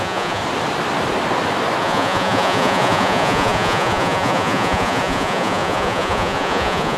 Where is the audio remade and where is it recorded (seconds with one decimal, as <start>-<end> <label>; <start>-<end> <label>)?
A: 0.0-0.4 remade; 0.4-1.8 recorded; 1.8-7.0 remade

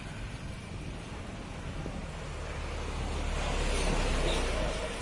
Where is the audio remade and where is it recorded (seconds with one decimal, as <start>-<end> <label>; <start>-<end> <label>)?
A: 0.0-5.0 recorded

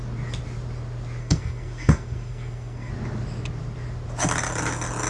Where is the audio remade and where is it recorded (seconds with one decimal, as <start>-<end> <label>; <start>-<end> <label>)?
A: 0.0-1.2 recorded; 1.2-2.9 remade; 2.9-5.1 recorded

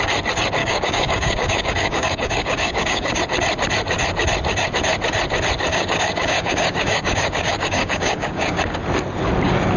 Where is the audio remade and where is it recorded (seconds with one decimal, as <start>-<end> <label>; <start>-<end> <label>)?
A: 0.0-0.6 recorded; 0.6-3.2 remade; 3.2-5.7 recorded; 5.7-8.6 remade; 8.6-9.8 recorded

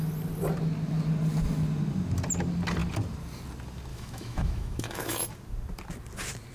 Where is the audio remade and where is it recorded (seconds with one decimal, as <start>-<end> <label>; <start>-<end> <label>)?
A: 0.0-3.9 recorded; 3.9-5.3 remade; 5.3-6.5 recorded

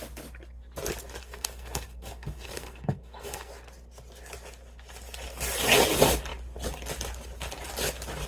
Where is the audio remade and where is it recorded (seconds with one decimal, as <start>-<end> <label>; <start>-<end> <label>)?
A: 0.0-1.2 recorded; 1.2-3.5 remade; 3.5-8.3 recorded

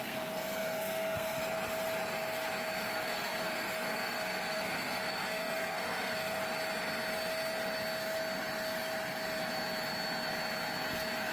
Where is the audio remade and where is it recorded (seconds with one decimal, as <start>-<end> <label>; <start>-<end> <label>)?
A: 0.0-1.4 remade; 1.4-2.9 recorded; 2.9-6.4 remade; 6.4-11.3 recorded